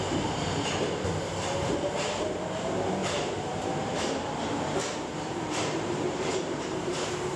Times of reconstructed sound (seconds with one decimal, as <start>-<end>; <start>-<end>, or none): 3.0-7.4